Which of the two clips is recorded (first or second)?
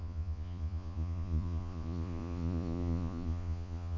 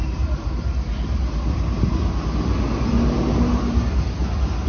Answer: second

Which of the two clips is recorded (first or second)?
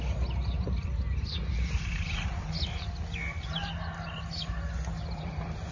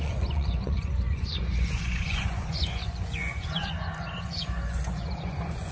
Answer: first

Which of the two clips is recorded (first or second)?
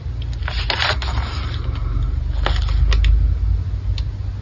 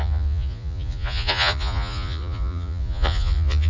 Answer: first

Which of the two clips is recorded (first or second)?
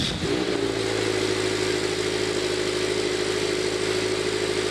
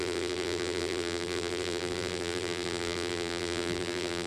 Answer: first